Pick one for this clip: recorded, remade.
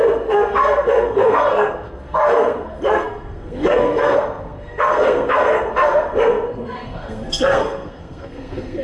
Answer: remade